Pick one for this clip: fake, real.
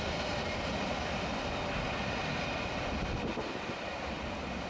real